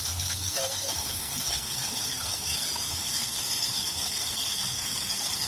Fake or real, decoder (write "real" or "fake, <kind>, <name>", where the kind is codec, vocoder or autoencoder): fake, codec, SNAC